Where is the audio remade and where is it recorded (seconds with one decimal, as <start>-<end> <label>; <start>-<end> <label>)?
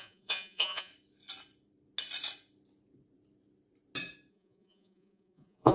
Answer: 0.0-0.9 remade; 0.9-4.3 recorded; 4.3-5.7 remade